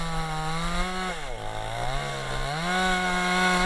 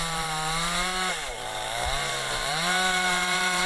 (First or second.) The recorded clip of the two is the first